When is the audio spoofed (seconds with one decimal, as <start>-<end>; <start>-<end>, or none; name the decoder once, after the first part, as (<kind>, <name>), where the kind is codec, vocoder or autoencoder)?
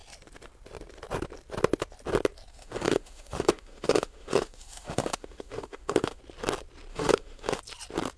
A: 2.5-6.2 (autoencoder, DAC-VAE); 6.9-7.6